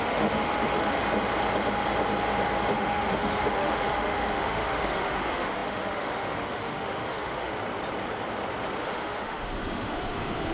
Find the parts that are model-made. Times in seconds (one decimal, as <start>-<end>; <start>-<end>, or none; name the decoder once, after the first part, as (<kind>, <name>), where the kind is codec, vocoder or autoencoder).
0.0-1.0 (autoencoder, DAC-VAE); 2.7-7.5; 8.8-10.5

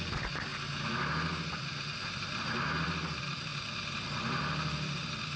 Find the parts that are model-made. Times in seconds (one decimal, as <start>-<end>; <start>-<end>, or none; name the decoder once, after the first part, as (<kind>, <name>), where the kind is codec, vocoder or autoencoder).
0.0-0.5 (vocoder, BigVGAN v2); 1.5-5.4

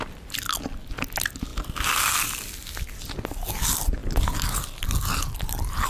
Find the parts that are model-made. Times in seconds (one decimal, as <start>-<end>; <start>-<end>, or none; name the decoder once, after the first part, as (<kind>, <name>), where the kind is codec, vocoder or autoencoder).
none

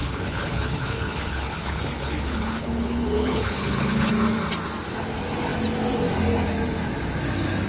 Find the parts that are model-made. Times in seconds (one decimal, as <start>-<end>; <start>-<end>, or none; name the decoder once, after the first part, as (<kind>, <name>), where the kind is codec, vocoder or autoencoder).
0.0-4.1 (codec, HILCodec)

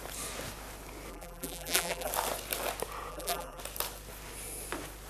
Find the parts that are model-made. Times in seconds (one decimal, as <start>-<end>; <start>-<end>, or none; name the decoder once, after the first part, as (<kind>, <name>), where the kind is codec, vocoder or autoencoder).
1.1-2.1 (vocoder, BigVGAN v2); 3.1-3.6

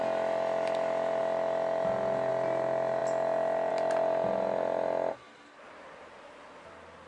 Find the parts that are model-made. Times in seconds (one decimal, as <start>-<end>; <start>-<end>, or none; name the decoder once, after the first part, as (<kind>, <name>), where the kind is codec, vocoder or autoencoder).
none

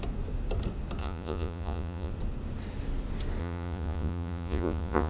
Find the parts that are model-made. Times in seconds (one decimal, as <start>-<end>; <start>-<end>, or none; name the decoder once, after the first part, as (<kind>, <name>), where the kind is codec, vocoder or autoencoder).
1.0-2.1 (vocoder, Vocos); 3.4-5.1